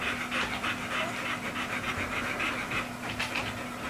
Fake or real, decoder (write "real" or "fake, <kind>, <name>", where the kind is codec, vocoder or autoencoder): real